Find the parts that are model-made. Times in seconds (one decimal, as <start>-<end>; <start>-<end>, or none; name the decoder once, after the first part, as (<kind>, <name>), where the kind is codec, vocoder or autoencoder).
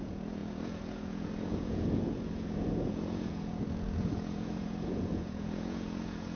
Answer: 0.0-6.4 (vocoder, Vocos)